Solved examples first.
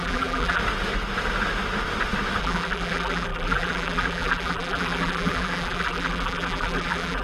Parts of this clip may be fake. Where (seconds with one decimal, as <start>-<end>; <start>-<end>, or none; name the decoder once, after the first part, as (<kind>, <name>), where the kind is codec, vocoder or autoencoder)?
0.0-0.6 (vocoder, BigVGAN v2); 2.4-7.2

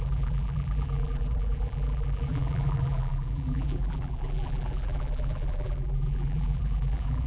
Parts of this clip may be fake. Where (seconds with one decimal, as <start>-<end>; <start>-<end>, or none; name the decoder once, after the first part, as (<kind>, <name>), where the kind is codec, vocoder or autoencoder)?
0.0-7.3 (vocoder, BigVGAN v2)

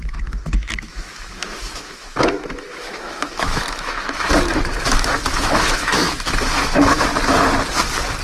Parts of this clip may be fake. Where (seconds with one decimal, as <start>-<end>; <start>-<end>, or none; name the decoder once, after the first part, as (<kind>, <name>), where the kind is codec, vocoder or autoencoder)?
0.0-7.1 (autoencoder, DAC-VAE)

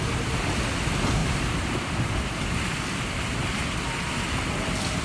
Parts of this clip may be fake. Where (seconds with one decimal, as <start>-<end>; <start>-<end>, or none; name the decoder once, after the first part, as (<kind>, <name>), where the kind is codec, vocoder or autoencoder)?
none

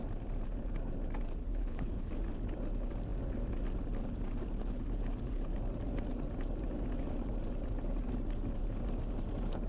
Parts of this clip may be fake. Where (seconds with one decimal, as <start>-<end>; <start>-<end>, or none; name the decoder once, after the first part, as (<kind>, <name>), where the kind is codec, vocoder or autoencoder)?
1.4-2.1 (codec, HILCodec)

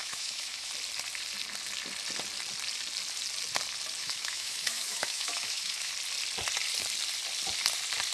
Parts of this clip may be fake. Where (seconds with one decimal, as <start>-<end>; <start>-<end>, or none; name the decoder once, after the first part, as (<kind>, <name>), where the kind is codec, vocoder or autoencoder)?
0.0-0.7 (autoencoder, DAC-VAE); 4.0-5.9

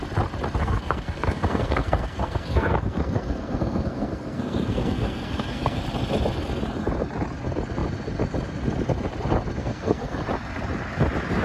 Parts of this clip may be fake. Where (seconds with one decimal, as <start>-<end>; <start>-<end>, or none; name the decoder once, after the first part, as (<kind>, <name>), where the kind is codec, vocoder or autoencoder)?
0.6-5.8 (codec, SNAC); 9.6-10.2

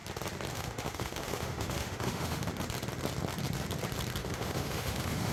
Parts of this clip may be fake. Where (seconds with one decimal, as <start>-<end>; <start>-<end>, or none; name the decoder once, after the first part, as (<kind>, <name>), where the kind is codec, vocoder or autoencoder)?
0.5-2.5 (autoencoder, DAC-VAE); 4.2-5.3